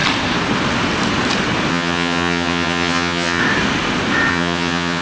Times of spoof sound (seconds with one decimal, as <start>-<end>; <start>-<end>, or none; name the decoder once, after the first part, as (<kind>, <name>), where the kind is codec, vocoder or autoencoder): 1.7-3.4 (vocoder, HiFi-GAN); 4.3-5.0